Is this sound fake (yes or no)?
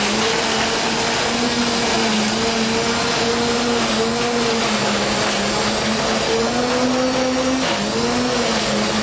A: no